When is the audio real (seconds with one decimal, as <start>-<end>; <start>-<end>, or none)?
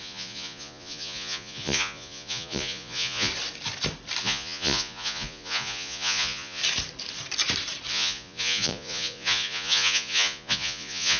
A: 3.3-4.2; 6.6-7.9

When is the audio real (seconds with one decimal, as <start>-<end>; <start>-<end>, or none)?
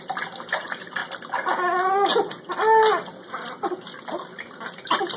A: 0.0-5.2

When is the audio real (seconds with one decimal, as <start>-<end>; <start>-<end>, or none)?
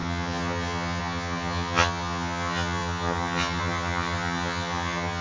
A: none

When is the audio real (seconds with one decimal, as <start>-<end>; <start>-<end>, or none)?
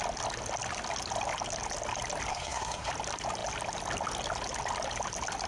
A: 0.0-2.3; 2.9-5.5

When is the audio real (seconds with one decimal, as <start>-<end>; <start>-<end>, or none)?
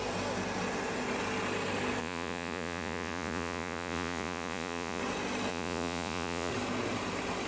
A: 0.0-2.0; 5.0-5.5; 6.5-7.5